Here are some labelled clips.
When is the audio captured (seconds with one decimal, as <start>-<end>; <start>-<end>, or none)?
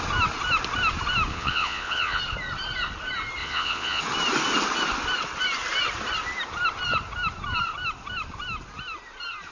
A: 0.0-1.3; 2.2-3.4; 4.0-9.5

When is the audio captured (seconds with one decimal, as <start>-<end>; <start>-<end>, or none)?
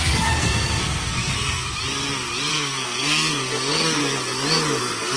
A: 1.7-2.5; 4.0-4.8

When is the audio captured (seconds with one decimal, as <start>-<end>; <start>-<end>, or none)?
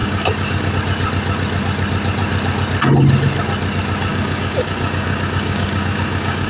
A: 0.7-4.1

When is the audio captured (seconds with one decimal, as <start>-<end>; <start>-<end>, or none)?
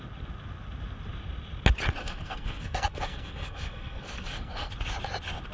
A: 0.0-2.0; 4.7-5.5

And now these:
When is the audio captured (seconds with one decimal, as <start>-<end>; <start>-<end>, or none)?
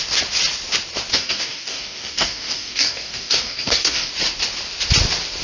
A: 0.0-1.1; 4.1-5.4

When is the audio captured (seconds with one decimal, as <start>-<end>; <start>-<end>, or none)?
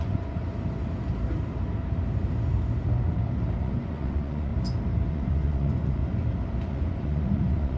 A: 0.4-3.6; 4.5-5.1; 6.0-6.7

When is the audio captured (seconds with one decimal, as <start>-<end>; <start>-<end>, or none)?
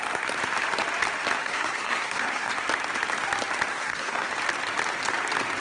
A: 0.0-1.4; 2.5-3.7; 4.3-5.6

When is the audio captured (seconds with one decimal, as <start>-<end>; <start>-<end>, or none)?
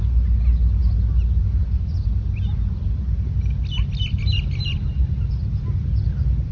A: 0.0-6.5